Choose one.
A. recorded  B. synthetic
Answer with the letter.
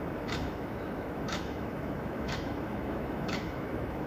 B